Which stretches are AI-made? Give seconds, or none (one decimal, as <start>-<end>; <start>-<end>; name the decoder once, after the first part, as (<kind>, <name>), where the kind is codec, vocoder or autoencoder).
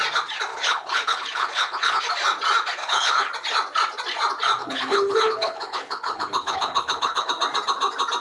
0.5-2.0 (codec, HILCodec); 2.8-3.3; 4.6-7.3